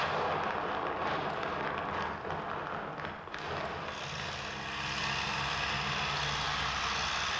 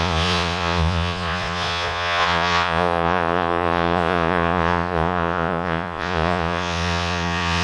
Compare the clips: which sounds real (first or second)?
first